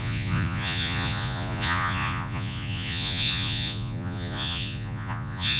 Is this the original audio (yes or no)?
no